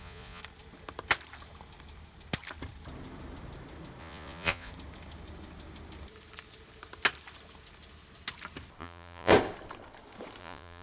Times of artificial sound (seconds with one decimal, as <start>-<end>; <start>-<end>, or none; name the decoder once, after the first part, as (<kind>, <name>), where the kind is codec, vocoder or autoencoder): 0.0-0.4 (vocoder, Vocos); 4.0-4.7; 8.8-9.3; 10.4-10.8